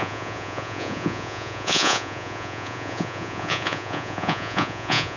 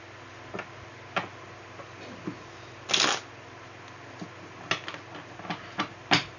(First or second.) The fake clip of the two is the first